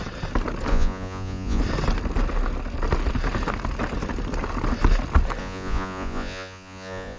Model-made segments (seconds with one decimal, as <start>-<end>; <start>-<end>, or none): 0.7-1.6; 5.4-7.2

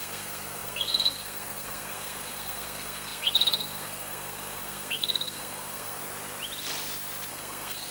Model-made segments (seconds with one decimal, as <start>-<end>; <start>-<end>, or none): 0.0-6.0; 7.3-7.9